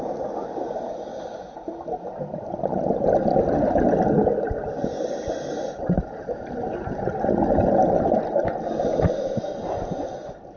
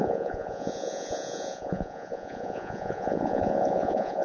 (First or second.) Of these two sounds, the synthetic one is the second